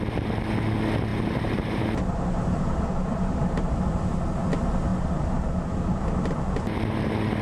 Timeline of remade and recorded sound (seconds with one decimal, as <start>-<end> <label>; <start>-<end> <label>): 0.0-1.1 recorded; 1.1-4.1 remade; 4.1-7.4 recorded